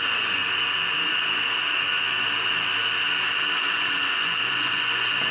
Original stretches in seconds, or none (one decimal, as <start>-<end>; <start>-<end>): 0.4-3.6